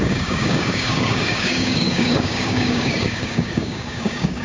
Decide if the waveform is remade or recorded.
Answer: remade